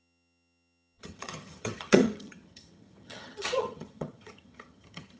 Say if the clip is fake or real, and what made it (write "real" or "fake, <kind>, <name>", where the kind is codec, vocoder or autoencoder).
fake, vocoder, HiFi-GAN